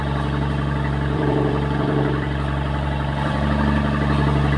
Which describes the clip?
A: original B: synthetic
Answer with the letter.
B